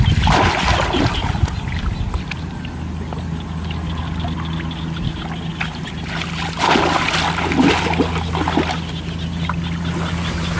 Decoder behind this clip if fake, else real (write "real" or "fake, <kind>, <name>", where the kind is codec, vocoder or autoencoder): real